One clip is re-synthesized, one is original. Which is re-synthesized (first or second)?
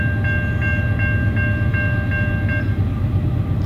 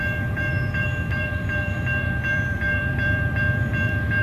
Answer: second